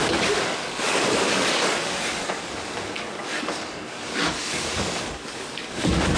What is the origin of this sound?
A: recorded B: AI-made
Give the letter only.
B